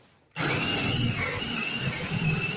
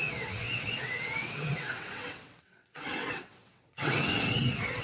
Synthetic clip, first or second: second